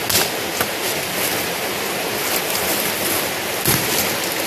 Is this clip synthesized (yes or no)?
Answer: no